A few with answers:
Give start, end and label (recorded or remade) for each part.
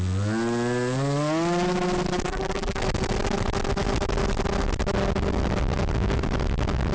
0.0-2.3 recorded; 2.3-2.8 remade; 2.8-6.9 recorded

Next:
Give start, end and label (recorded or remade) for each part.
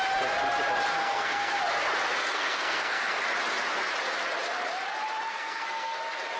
0.0-1.0 recorded; 1.0-1.6 remade; 1.6-2.2 recorded; 2.2-3.2 remade; 3.2-5.3 recorded; 5.3-6.0 remade; 6.0-6.4 recorded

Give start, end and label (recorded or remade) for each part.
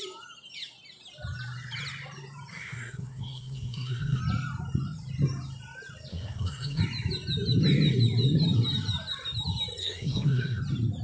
0.0-2.5 recorded; 2.5-4.2 remade; 4.2-6.1 recorded; 6.1-6.8 remade; 6.8-9.8 recorded; 9.8-10.6 remade; 10.6-11.0 recorded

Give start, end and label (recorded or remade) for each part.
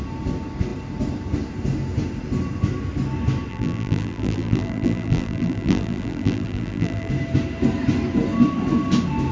0.0-3.5 recorded; 3.5-7.1 remade; 7.1-9.3 recorded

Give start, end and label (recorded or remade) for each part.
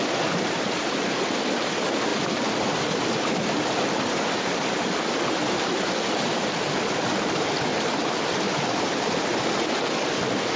0.0-10.6 recorded